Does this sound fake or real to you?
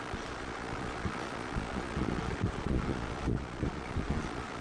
fake